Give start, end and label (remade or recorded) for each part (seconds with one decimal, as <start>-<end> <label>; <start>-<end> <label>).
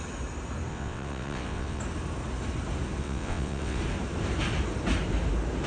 0.0-0.7 recorded; 0.7-1.8 remade; 1.8-3.0 recorded; 3.0-3.8 remade; 3.8-5.7 recorded